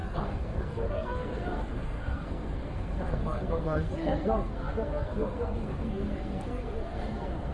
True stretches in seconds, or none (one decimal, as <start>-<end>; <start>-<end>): none